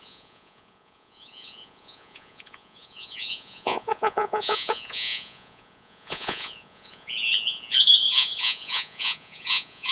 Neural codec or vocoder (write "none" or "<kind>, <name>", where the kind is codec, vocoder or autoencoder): vocoder, Vocos